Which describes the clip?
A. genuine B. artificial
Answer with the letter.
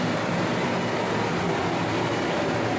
A